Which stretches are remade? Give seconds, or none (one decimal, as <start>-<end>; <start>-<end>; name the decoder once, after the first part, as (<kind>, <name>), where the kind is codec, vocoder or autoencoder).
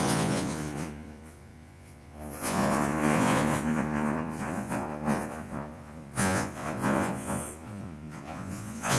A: 0.0-9.0 (vocoder, Vocos)